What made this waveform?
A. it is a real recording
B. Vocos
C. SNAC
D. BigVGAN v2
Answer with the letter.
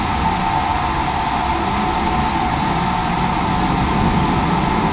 A